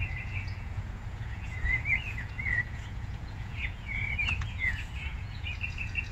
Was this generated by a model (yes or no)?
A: yes